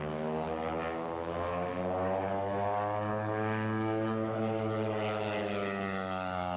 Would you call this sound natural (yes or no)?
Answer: no